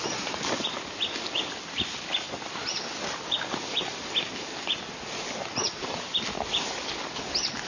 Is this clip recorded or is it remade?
recorded